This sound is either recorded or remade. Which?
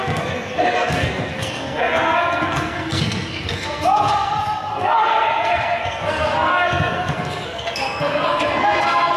remade